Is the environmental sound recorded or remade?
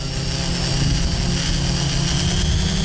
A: recorded